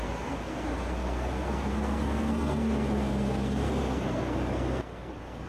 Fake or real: fake